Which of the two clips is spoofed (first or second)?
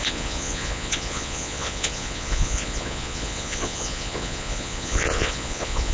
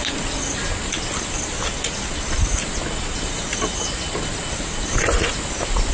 first